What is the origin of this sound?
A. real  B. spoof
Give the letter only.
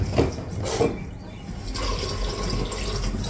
A